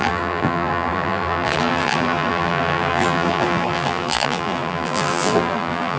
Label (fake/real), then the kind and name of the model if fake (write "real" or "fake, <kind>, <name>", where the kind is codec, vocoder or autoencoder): fake, vocoder, BigVGAN v2